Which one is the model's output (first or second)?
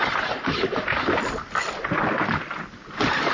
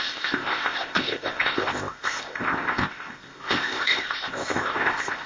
second